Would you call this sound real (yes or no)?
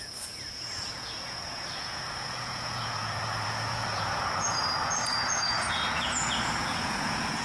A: no